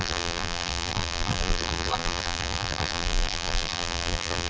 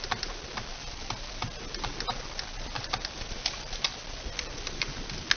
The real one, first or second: second